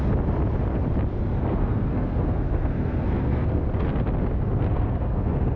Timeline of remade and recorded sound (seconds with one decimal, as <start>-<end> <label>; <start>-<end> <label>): 0.0-1.5 recorded; 1.5-3.6 remade; 3.6-4.7 recorded; 4.7-5.6 remade

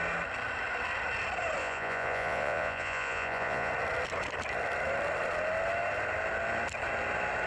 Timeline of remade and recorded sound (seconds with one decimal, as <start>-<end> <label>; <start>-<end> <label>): 0.0-1.6 recorded; 1.6-3.7 remade; 3.7-7.5 recorded

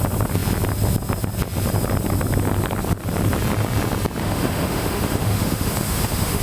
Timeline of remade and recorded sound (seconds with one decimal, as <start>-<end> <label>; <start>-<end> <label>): 0.0-4.2 recorded; 4.2-6.4 remade